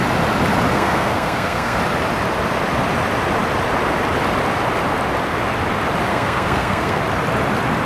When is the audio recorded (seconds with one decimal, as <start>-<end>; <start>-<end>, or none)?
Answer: 0.0-0.7; 1.8-6.1; 7.0-7.8